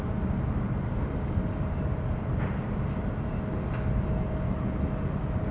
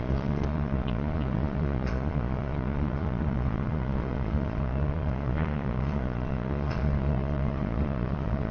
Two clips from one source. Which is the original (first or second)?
first